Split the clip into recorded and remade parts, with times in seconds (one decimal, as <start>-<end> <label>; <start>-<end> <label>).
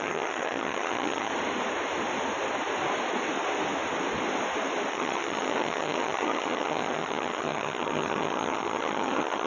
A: 0.0-1.3 remade; 1.3-4.9 recorded; 4.9-9.5 remade